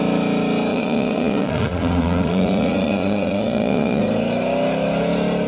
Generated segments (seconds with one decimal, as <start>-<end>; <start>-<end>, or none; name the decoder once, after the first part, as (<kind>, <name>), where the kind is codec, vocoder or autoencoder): 0.7-4.0 (vocoder, Vocos)